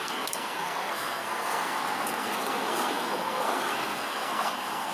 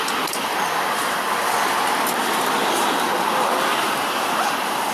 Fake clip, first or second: first